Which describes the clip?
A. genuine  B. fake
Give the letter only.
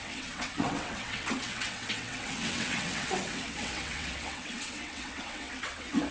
B